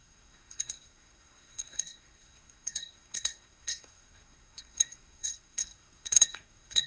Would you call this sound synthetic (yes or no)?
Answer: yes